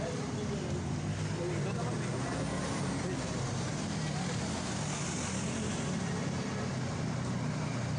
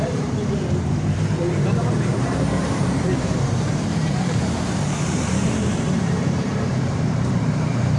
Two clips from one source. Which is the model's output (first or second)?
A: second